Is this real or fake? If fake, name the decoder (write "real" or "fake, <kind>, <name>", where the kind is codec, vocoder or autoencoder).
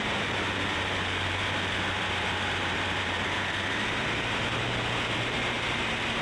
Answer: fake, vocoder, BigVGAN v2